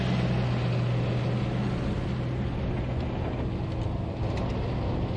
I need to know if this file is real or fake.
real